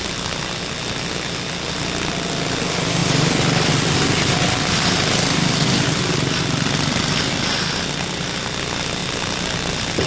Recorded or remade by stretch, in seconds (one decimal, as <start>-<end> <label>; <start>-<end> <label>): 0.0-10.1 recorded